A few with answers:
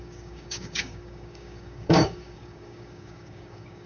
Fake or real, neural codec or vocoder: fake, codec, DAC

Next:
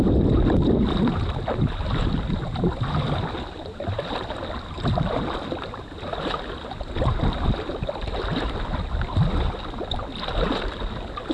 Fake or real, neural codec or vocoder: real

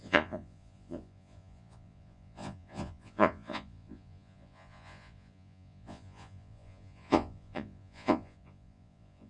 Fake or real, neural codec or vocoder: fake, vocoder, Vocos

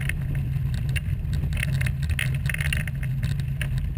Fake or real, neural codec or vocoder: real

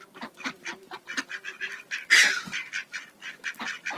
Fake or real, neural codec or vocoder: real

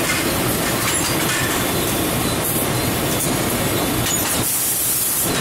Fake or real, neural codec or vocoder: fake, vocoder, BigVGAN v2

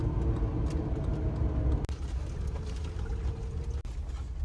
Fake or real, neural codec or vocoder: real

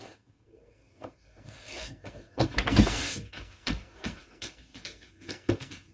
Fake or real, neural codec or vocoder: fake, codec, SNAC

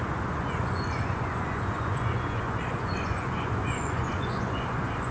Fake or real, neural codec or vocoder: fake, vocoder, Vocos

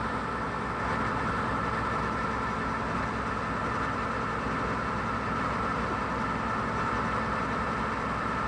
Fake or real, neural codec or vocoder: real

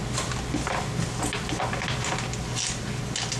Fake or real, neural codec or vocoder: real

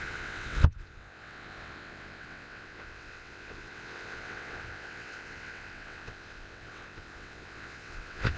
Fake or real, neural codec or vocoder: fake, vocoder, WaveNeXt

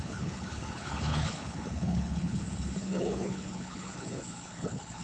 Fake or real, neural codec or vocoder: fake, codec, HILCodec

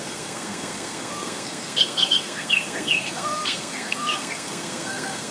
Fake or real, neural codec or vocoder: fake, codec, SNAC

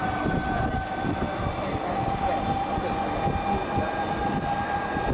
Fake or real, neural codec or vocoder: real